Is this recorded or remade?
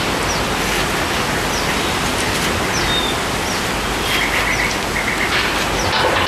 recorded